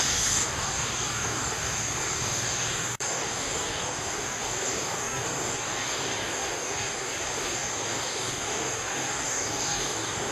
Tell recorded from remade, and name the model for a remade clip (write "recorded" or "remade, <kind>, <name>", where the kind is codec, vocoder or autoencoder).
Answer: remade, codec, DAC